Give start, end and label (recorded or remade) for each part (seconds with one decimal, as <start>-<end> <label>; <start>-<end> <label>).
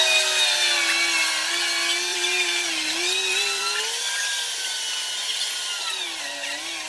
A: 0.0-2.1 recorded; 2.1-3.6 remade; 3.6-6.9 recorded